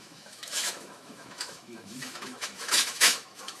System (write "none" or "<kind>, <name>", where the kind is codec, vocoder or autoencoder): autoencoder, DAC-VAE